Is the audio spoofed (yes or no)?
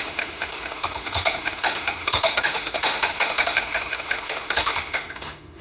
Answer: yes